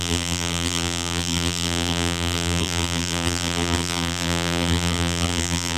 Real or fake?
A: fake